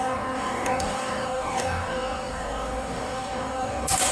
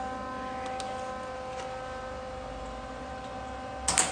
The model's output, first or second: first